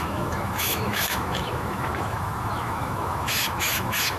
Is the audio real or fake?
fake